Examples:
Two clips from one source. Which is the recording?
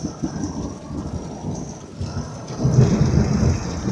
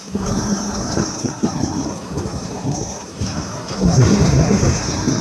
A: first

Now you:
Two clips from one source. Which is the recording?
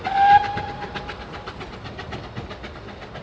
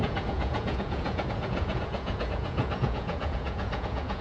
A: first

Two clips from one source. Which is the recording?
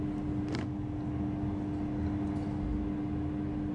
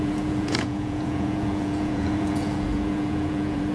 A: first